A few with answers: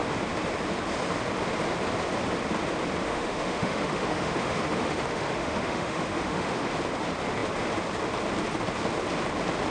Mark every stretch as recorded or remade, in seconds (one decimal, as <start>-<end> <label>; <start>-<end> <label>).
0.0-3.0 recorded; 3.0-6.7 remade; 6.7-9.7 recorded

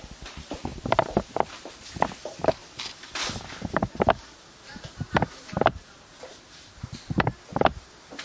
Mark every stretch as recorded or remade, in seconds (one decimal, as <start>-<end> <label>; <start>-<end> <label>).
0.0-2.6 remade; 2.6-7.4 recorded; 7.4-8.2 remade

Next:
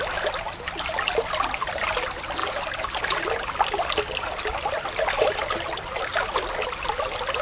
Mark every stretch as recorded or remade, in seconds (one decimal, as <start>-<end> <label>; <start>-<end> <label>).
0.0-7.4 recorded

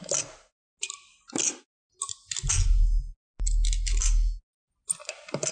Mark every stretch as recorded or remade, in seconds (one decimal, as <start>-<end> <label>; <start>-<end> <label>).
0.0-5.5 recorded